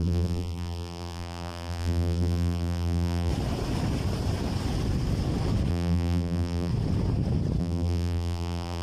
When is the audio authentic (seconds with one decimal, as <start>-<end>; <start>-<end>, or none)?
3.3-5.7; 6.7-7.6